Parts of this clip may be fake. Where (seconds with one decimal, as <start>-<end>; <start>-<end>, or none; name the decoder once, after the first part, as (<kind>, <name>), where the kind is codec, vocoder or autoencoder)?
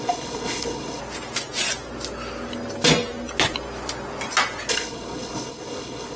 0.0-1.0 (codec, HILCodec); 4.7-6.2